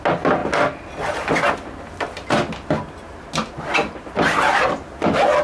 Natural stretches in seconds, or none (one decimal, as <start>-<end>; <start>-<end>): 0.0-5.4